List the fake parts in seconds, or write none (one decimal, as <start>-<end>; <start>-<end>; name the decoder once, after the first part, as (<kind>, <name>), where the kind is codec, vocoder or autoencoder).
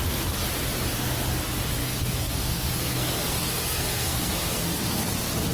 1.8-5.1 (codec, SNAC)